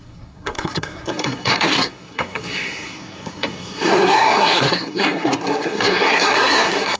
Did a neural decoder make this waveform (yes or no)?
yes